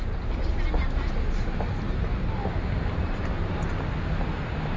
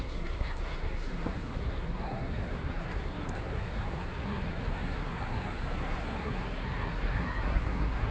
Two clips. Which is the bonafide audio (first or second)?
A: first